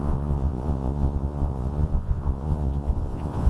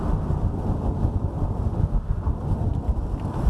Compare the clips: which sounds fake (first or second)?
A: first